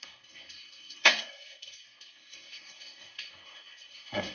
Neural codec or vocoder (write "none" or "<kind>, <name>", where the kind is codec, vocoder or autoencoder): codec, SNAC